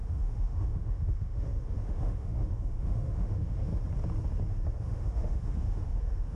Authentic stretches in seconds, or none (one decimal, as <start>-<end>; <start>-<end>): 3.7-4.8